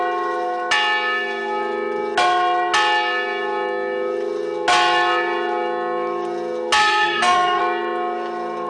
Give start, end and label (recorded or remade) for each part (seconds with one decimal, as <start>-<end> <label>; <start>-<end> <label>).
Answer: 0.0-6.8 recorded; 6.8-7.6 remade; 7.6-8.7 recorded